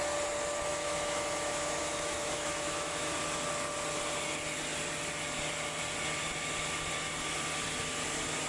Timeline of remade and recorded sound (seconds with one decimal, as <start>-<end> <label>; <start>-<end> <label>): 0.0-0.7 recorded; 0.7-3.1 remade; 3.1-8.5 recorded